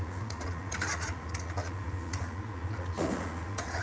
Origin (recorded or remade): remade